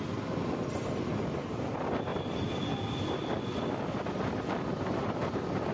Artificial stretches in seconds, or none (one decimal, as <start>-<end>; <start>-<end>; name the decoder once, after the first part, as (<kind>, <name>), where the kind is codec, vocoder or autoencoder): none

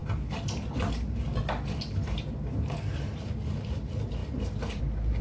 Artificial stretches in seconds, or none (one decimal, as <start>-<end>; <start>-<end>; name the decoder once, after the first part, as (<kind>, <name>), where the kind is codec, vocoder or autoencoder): none